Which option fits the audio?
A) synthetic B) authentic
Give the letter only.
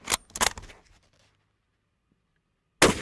B